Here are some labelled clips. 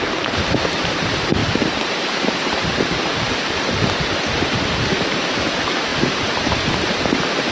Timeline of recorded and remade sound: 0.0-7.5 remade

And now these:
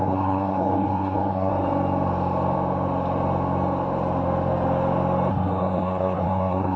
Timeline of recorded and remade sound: 0.0-1.5 remade; 1.5-5.3 recorded; 5.3-6.8 remade

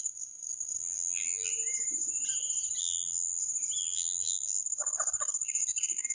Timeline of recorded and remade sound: 0.0-0.8 recorded; 0.8-1.5 remade; 1.5-2.8 recorded; 2.8-3.4 remade; 3.4-3.8 recorded; 3.8-4.6 remade; 4.6-6.1 recorded

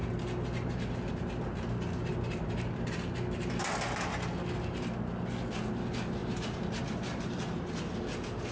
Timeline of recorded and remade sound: 0.0-8.5 recorded